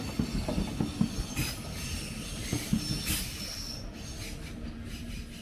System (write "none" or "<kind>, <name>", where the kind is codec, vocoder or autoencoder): none